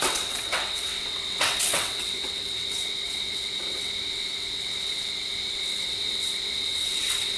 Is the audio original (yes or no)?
no